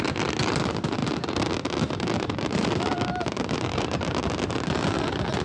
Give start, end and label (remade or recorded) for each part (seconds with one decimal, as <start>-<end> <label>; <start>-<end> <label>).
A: 0.0-1.0 recorded; 1.0-4.2 remade; 4.2-5.4 recorded